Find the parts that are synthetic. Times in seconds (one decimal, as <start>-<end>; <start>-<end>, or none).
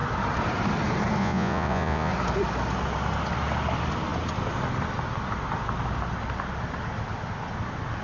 1.2-2.1